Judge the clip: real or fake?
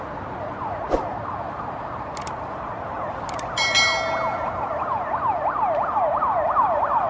real